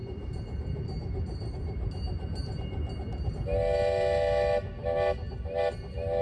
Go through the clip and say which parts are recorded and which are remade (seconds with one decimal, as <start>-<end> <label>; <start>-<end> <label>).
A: 0.0-6.2 recorded